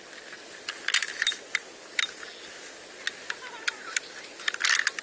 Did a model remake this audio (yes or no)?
no